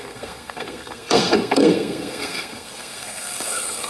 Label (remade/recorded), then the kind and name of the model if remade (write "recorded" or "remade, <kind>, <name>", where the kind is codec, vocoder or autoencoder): remade, codec, SNAC